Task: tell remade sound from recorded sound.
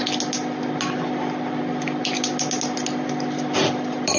recorded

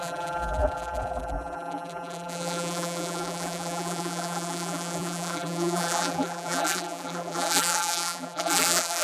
remade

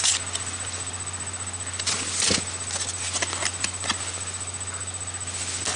recorded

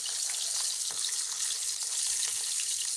remade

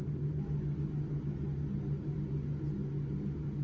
recorded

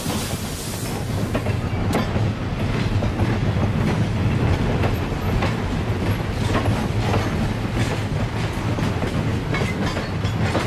recorded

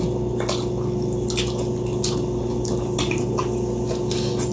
recorded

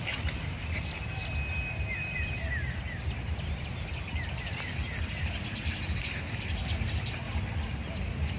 recorded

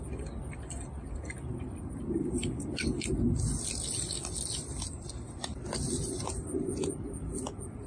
recorded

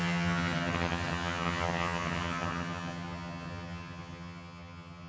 remade